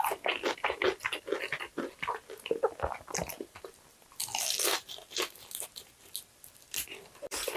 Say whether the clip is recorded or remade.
recorded